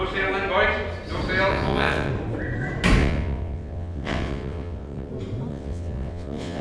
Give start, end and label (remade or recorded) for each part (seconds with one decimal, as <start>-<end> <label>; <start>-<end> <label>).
0.0-1.5 recorded; 1.5-2.1 remade; 2.1-3.0 recorded; 3.0-5.1 remade; 5.1-5.5 recorded; 5.5-6.6 remade